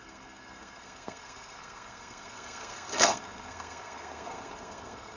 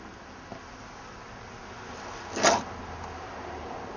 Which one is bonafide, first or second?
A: second